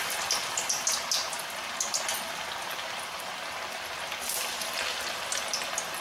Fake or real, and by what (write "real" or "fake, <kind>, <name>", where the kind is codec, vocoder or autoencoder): real